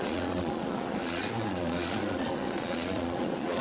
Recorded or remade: remade